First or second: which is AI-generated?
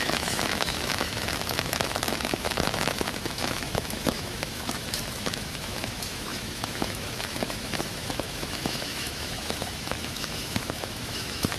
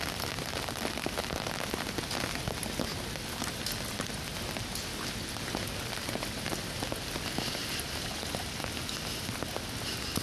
first